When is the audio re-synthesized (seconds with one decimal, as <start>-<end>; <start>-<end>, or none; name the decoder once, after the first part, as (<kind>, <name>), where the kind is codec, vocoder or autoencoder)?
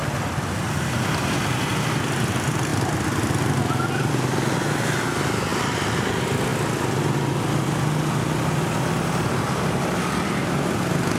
5.5-6.1 (vocoder, BigVGAN v2)